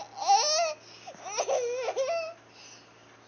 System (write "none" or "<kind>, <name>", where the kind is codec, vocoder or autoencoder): none